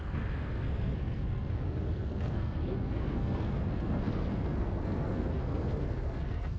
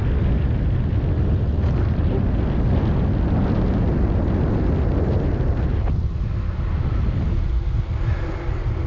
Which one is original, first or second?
second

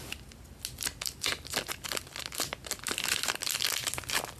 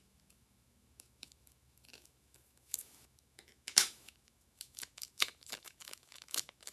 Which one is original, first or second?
first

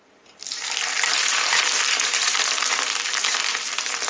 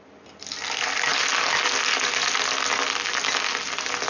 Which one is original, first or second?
second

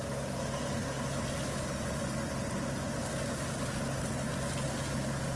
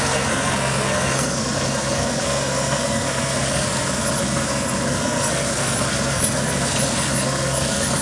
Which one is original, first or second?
first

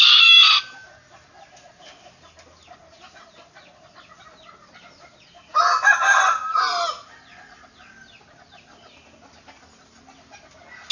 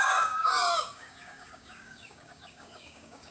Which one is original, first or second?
first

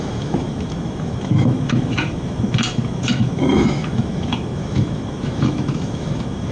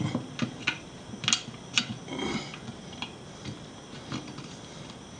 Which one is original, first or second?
second